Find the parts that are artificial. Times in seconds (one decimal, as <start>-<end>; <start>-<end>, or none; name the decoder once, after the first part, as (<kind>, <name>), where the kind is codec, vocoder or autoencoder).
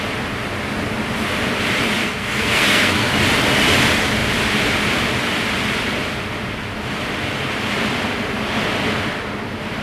2.0-3.1 (codec, SNAC)